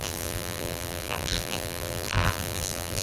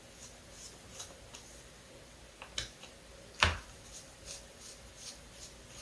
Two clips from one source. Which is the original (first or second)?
second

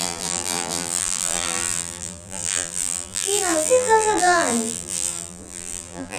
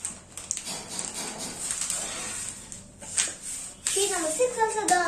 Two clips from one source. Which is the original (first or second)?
second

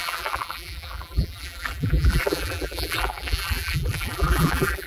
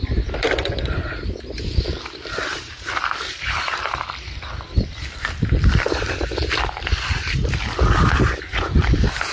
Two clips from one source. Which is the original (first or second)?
second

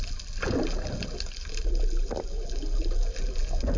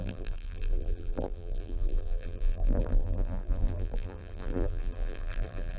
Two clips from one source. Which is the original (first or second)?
first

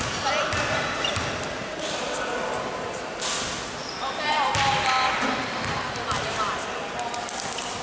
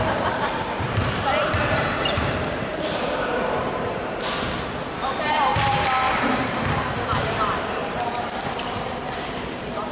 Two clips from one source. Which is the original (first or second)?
first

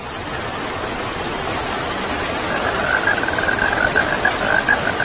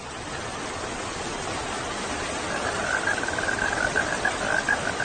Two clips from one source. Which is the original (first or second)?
first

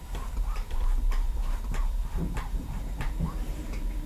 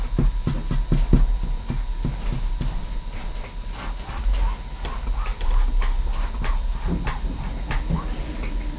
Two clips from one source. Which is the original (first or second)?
second